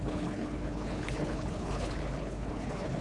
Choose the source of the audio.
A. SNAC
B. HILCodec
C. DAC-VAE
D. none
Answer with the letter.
B